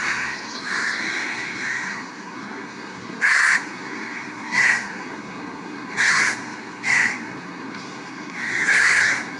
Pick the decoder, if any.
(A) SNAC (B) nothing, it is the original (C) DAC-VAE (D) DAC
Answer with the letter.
A